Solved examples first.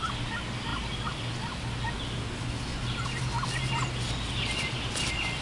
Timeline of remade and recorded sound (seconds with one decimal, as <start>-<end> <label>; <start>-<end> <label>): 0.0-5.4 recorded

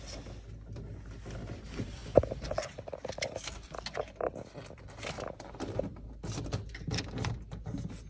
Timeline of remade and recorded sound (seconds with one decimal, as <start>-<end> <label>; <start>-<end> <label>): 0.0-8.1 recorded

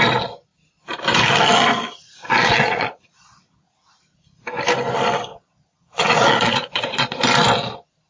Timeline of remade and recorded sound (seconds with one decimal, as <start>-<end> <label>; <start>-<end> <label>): 0.0-2.2 recorded; 2.2-3.7 remade; 3.7-5.3 recorded; 5.3-7.2 remade; 7.2-8.1 recorded

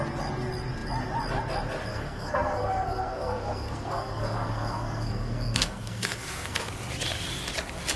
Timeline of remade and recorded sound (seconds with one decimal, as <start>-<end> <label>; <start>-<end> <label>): 0.0-1.9 recorded; 1.9-6.7 remade; 6.7-8.0 recorded

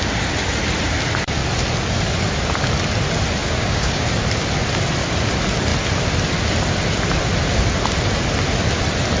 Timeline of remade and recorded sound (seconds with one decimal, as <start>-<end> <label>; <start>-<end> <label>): 0.0-3.4 recorded; 3.4-4.1 remade; 4.1-9.2 recorded

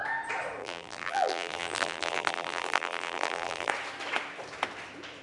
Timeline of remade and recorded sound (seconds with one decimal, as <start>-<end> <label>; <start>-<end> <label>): 0.0-0.6 recorded; 0.6-3.7 remade; 3.7-5.2 recorded